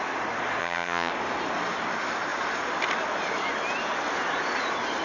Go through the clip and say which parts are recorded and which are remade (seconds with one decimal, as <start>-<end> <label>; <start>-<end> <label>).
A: 0.0-0.6 recorded; 0.6-1.1 remade; 1.1-5.0 recorded